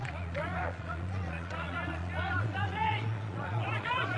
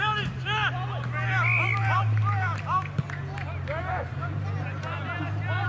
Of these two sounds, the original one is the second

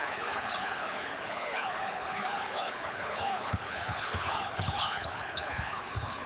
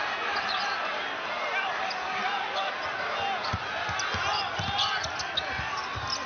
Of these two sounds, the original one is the second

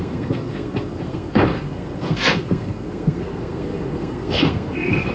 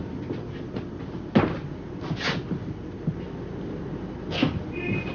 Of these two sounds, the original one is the second